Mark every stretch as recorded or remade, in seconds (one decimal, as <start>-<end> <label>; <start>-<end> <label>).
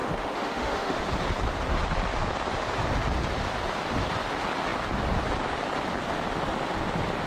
0.0-1.0 remade; 1.0-7.3 recorded